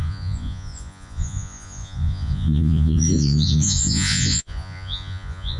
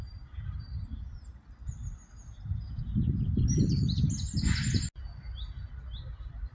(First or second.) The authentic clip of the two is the second